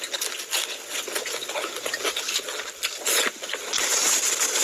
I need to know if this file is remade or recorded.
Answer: recorded